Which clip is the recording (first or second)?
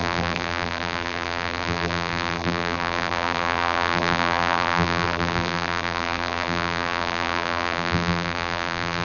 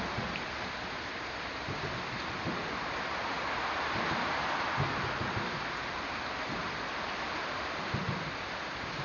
second